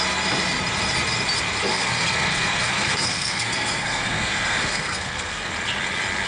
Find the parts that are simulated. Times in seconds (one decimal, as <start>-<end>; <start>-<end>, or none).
1.7-5.5

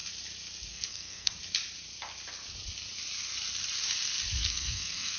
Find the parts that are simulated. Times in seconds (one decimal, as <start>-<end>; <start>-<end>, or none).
0.7-1.3; 4.4-5.2

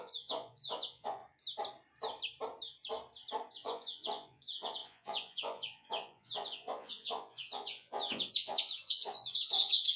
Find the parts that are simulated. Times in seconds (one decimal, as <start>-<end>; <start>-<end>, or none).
0.0-1.2; 3.5-10.0